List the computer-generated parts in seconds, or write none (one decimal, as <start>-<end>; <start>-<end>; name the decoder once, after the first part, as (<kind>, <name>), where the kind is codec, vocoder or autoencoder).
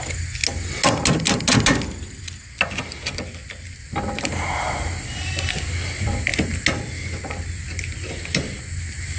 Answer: none